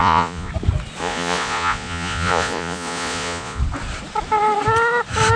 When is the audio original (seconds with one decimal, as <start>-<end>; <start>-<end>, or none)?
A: 0.5-1.0; 3.6-5.4